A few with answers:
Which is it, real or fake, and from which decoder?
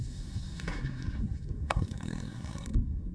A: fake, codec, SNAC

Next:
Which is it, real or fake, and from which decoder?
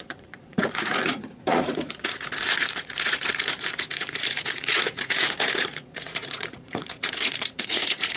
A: fake, vocoder, Vocos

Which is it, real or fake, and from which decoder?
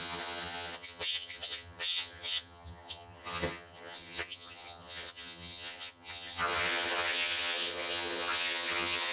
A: fake, vocoder, HiFi-GAN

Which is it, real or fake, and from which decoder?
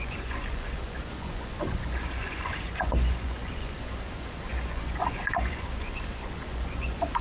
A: fake, vocoder, Vocos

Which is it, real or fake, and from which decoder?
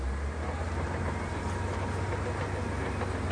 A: real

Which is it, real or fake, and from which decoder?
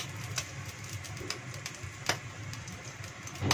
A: real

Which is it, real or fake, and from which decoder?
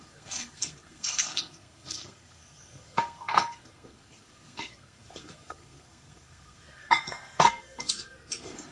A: fake, codec, SNAC